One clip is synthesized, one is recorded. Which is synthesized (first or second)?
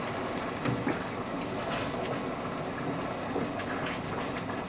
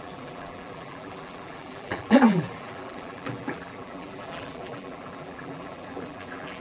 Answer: second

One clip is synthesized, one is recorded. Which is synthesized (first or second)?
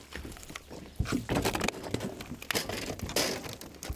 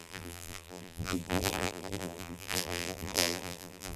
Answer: second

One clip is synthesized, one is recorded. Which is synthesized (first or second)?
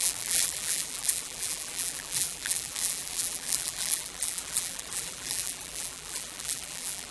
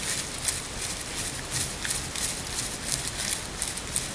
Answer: first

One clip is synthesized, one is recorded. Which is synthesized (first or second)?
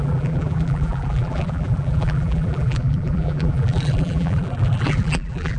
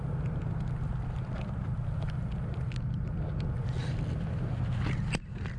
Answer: first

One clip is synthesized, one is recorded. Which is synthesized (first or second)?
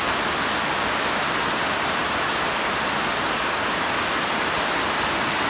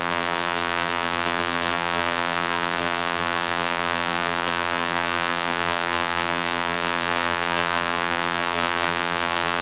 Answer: second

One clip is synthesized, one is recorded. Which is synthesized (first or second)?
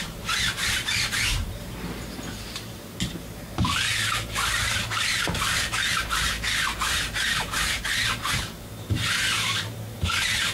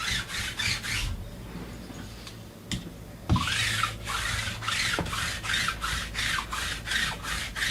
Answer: first